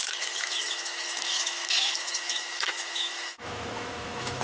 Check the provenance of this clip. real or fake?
fake